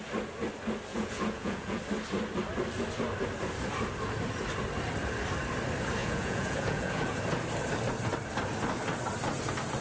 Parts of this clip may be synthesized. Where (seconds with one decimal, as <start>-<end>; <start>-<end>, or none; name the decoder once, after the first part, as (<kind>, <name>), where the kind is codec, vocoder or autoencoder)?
0.9-1.8 (vocoder, Vocos); 6.0-7.2

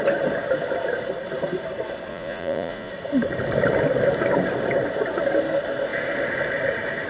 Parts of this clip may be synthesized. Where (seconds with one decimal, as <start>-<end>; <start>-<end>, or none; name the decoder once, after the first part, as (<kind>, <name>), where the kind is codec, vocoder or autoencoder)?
2.1-2.9 (vocoder, Vocos)

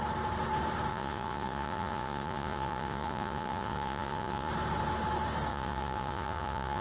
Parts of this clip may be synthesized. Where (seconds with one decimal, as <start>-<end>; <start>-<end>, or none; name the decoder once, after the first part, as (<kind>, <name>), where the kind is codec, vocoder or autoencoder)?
0.9-4.5 (vocoder, Vocos); 5.5-6.8

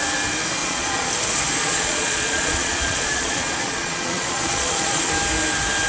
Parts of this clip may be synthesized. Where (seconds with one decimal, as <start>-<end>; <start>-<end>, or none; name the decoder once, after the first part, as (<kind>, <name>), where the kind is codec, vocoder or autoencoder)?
0.6-1.1 (vocoder, Vocos); 1.6-5.1

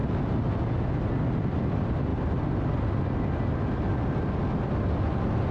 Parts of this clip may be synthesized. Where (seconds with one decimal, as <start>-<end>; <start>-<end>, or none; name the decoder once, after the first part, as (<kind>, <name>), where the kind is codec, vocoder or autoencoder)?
none

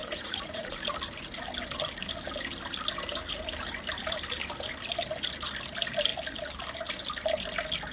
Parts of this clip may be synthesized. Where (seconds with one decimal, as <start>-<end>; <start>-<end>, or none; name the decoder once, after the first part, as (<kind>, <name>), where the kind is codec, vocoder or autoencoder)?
0.0-0.8 (vocoder, Vocos)

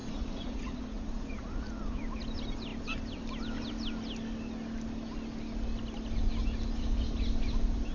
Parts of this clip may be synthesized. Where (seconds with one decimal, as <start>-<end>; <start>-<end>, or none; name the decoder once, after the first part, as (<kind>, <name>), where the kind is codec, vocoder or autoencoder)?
0.0-2.0 (vocoder, Vocos)

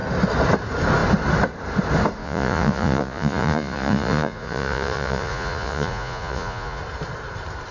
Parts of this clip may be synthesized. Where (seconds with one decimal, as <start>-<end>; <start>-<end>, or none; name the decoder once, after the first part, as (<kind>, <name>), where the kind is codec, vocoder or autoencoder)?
2.2-6.8 (vocoder, Vocos)